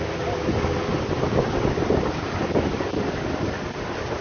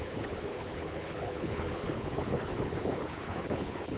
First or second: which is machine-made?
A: second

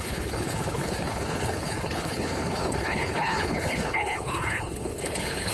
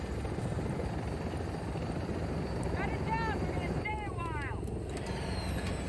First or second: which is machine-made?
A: first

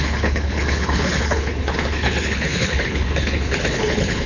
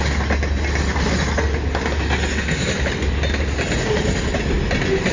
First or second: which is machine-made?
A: first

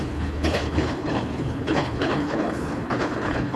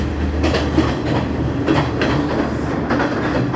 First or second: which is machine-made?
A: first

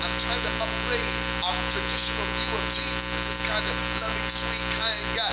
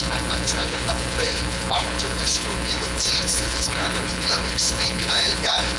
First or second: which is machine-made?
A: second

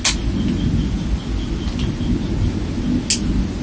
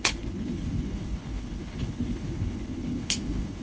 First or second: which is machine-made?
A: second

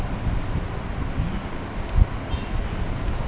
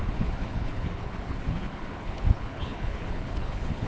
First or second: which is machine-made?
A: second